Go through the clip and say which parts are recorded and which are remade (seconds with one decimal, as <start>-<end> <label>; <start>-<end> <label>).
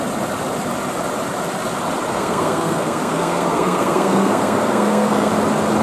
0.0-2.1 recorded; 2.1-5.3 remade; 5.3-5.8 recorded